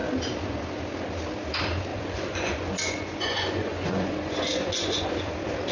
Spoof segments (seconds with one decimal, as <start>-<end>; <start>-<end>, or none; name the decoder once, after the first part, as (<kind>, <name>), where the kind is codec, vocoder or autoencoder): 1.9-5.1 (vocoder, Vocos)